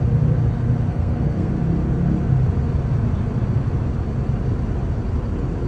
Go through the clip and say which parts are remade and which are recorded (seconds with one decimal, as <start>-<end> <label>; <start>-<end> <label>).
0.0-0.9 recorded; 0.9-1.5 remade; 1.5-5.7 recorded